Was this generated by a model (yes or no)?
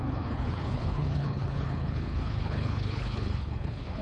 yes